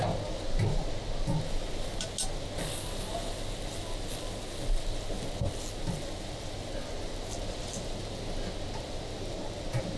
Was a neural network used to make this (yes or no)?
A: no